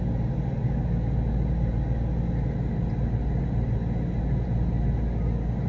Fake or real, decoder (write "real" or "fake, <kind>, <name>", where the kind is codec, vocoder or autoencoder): real